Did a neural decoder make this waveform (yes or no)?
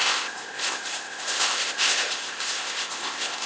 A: yes